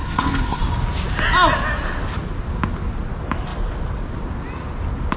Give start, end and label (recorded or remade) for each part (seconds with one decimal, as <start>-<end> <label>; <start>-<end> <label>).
0.0-0.6 remade; 0.6-5.2 recorded